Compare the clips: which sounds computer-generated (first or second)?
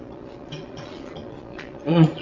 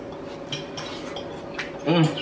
first